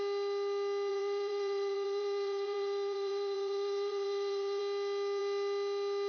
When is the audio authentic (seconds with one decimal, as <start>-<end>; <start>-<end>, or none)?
0.0-0.9; 4.6-6.1